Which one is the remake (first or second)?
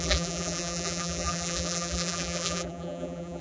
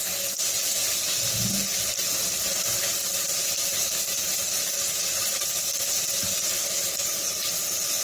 first